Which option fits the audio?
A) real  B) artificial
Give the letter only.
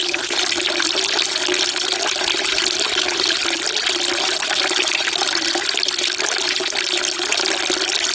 A